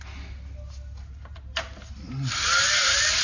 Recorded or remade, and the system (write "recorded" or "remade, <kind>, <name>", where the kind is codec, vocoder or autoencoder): recorded